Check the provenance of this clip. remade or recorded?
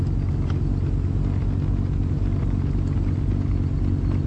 recorded